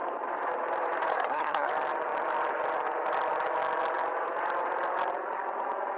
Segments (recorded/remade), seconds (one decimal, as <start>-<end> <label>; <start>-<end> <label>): 0.0-1.1 recorded; 1.1-1.7 remade; 1.7-6.0 recorded